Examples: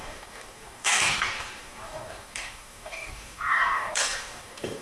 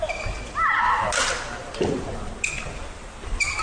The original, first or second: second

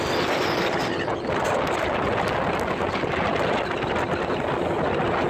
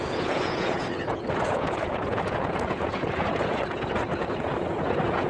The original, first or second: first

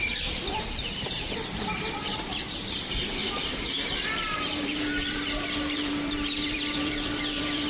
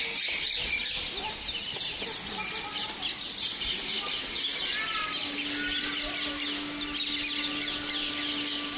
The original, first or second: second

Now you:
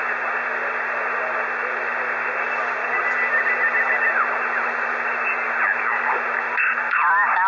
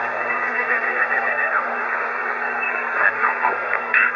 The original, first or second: first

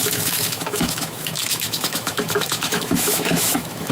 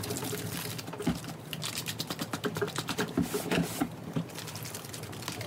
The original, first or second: second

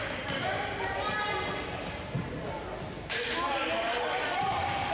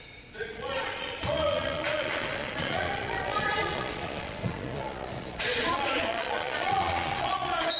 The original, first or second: first